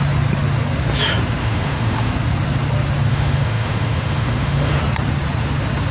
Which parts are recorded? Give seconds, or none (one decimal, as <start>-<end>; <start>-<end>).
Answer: 0.0-1.4; 2.1-3.1; 4.8-5.9